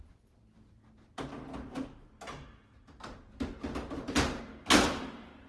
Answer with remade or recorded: recorded